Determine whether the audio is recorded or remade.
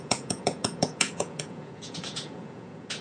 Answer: remade